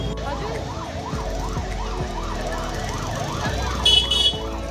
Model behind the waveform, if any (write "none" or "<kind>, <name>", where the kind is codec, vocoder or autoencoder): none